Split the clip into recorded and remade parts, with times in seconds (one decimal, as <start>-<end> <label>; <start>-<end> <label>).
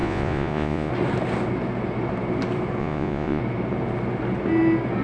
0.0-0.9 remade; 0.9-2.8 recorded; 2.8-3.4 remade; 3.4-5.0 recorded